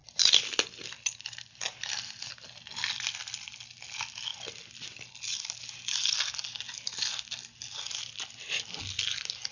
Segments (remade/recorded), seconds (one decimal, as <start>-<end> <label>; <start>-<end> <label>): 0.0-1.6 remade; 1.6-9.5 recorded